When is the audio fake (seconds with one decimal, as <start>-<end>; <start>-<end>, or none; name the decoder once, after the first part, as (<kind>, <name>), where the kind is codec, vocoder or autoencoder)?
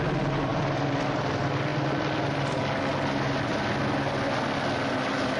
none